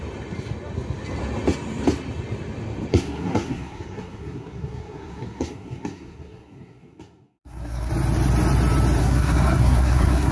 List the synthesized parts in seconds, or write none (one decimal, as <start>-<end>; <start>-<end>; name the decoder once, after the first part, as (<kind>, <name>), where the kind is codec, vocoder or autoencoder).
2.9-7.9 (codec, SNAC); 9.0-10.3